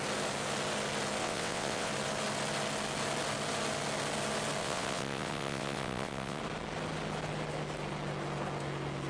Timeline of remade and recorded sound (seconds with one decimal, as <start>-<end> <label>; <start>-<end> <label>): 0.0-1.2 recorded; 1.2-1.9 remade; 1.9-4.6 recorded; 4.6-6.4 remade; 6.4-9.1 recorded